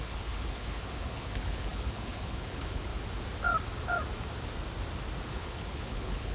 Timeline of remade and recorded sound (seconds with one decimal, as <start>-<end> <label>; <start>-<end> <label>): 0.0-2.9 remade; 2.9-5.3 recorded; 5.3-6.3 remade